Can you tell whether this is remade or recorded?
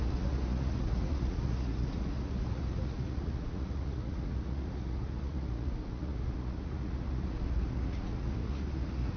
remade